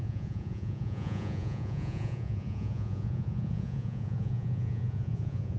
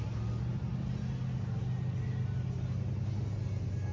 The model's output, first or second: first